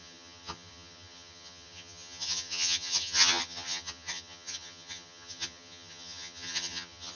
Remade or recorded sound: remade